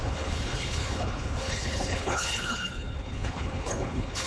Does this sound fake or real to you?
fake